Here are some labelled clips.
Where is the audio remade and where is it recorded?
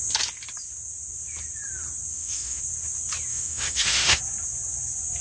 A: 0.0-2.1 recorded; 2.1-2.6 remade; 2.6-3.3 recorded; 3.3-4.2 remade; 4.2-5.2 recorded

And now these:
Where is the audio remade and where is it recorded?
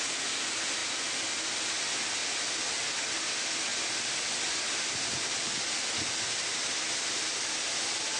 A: 0.0-8.2 recorded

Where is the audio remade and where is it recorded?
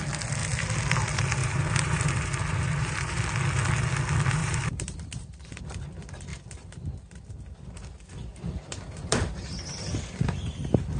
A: 0.0-1.4 recorded; 1.4-3.2 remade; 3.2-4.4 recorded; 4.4-5.6 remade; 5.6-11.0 recorded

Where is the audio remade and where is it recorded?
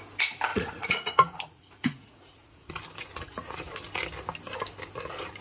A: 0.0-0.5 recorded; 0.5-2.7 remade; 2.7-3.1 recorded; 3.1-3.8 remade; 3.8-5.4 recorded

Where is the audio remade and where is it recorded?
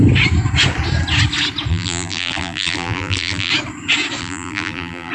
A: 0.0-1.7 recorded; 1.7-3.5 remade; 3.5-4.2 recorded; 4.2-5.1 remade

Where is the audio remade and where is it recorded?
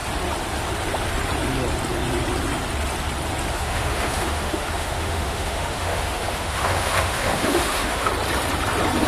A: 0.0-3.5 recorded; 3.5-8.1 remade; 8.1-9.1 recorded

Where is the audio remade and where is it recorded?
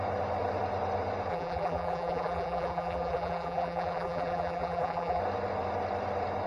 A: 0.0-1.3 recorded; 1.3-5.2 remade; 5.2-6.5 recorded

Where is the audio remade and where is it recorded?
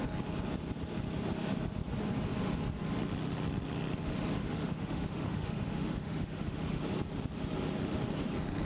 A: 0.0-4.4 recorded; 4.4-6.8 remade; 6.8-8.7 recorded